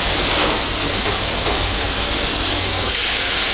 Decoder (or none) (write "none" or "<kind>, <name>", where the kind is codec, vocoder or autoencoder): codec, SNAC